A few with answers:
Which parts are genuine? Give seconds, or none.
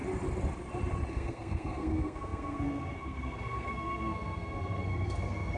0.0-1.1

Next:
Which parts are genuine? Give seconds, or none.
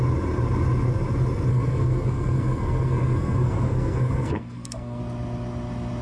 0.0-1.5; 5.0-6.0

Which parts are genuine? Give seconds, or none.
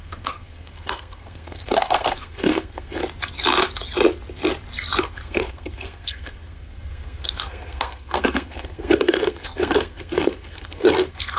3.0-5.0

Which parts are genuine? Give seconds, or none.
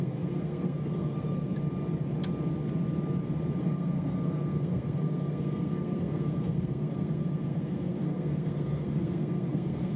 1.5-3.6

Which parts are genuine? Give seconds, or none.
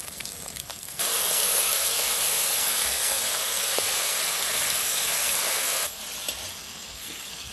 6.0-6.5